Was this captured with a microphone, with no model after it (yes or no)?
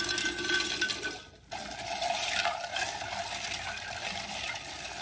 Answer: yes